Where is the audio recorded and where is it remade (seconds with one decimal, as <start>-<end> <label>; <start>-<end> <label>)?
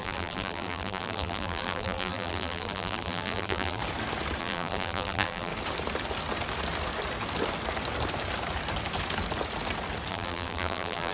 0.0-3.8 remade; 3.8-4.4 recorded; 4.4-5.5 remade; 5.5-10.1 recorded; 10.1-11.1 remade